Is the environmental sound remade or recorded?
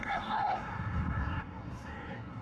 remade